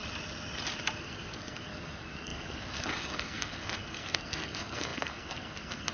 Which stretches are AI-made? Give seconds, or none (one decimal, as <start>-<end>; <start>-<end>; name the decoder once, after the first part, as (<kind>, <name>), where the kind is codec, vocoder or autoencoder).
1.0-5.9 (codec, SNAC)